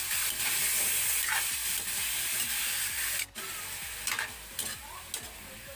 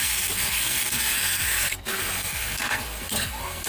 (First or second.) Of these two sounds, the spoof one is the second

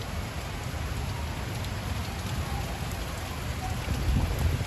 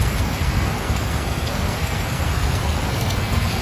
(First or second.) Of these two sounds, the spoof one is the second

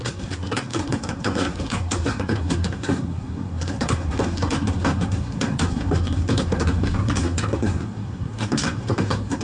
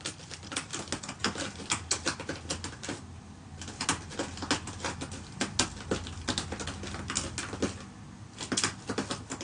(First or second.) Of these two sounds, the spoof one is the first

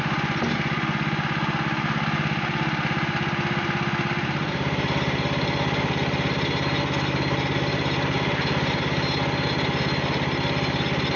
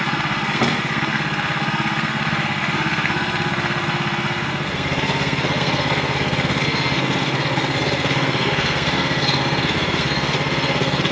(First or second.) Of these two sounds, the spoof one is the second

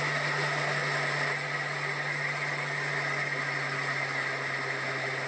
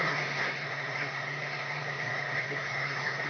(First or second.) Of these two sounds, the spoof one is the second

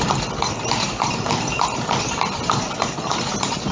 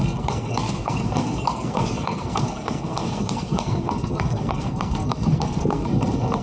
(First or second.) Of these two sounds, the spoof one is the second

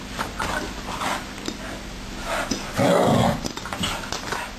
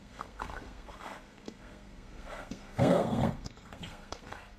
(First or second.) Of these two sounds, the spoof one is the second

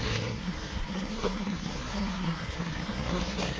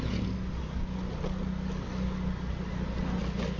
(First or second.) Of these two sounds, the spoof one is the first